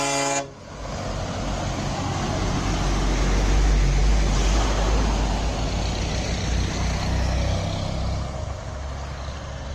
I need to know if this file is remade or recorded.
recorded